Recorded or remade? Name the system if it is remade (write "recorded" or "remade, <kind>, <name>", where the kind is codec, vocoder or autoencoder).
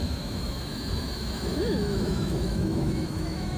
remade, autoencoder, DAC-VAE